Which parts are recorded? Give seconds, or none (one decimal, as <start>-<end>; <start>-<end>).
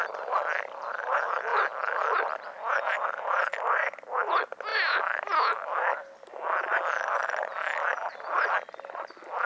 0.0-9.5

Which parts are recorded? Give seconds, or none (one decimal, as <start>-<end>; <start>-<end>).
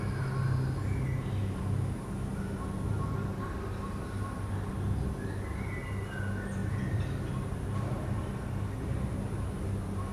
0.0-6.6; 8.9-10.1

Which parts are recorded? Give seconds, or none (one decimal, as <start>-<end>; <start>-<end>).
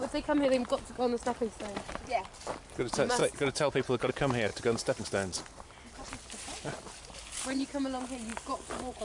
0.0-1.6; 2.2-3.2; 4.1-4.5; 5.0-8.3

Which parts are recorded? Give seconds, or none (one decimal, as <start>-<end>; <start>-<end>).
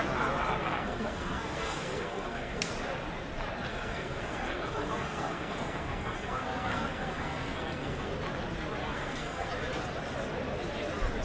0.0-0.6; 2.7-3.7; 8.1-8.8; 9.5-11.2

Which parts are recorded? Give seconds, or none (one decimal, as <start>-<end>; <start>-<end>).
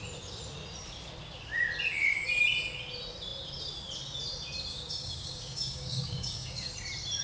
0.0-4.7; 6.7-7.2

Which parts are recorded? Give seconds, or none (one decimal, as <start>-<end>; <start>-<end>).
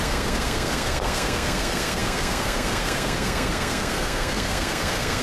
none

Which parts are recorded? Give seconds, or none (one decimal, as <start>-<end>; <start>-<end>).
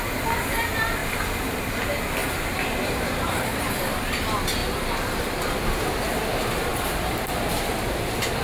0.0-1.0; 1.7-2.2; 4.0-6.7; 7.3-8.4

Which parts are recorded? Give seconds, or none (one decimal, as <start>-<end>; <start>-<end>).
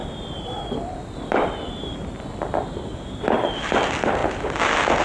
4.2-5.0